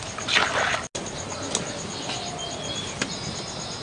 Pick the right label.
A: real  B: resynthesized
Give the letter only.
A